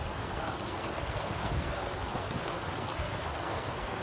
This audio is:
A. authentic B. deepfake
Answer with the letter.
B